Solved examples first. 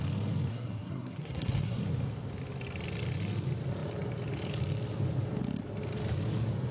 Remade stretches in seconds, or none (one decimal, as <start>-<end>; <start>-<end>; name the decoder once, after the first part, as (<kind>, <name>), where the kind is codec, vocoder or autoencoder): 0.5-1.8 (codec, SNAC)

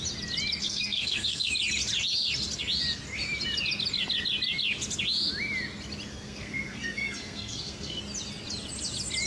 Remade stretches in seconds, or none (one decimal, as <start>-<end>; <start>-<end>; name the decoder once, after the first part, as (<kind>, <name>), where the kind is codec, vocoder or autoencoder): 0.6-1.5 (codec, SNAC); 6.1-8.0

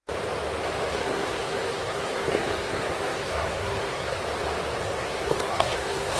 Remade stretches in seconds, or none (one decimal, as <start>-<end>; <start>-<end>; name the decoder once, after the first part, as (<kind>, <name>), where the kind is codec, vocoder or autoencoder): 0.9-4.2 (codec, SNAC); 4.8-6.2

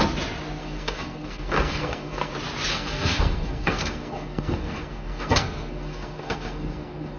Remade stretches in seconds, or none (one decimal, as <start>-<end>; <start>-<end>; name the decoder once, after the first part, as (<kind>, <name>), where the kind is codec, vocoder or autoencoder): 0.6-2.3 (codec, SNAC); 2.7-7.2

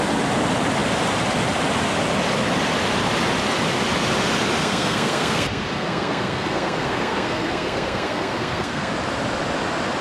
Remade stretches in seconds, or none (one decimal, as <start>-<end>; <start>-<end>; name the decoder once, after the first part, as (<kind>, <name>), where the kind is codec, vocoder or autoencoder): 4.6-8.9 (codec, SNAC)

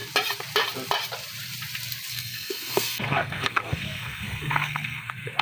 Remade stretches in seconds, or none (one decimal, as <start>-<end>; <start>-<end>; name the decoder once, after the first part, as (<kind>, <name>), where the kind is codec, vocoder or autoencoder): 2.1-5.4 (codec, SNAC)

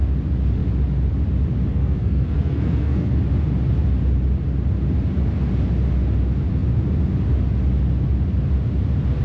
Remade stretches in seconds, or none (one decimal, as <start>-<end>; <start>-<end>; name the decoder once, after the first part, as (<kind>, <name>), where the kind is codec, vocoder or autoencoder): 1.7-3.2 (codec, SNAC)

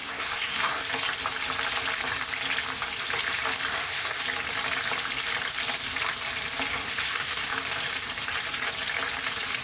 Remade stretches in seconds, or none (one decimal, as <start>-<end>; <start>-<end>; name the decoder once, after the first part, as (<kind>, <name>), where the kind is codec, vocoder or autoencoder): 0.0-0.8 (codec, SNAC); 3.7-4.2; 6.7-7.5